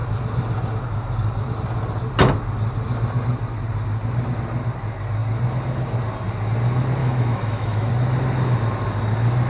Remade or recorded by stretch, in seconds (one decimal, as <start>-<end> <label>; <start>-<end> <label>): 0.0-7.0 recorded; 7.0-7.9 remade; 7.9-9.5 recorded